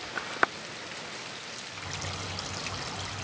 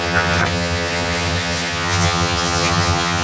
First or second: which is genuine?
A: first